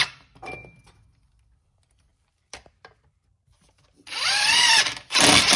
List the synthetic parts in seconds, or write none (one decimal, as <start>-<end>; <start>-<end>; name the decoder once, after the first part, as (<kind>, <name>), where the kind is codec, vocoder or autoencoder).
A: 2.1-4.7 (vocoder, BigVGAN v2)